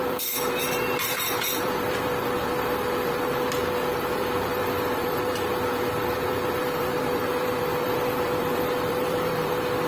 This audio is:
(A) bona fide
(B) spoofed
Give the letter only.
B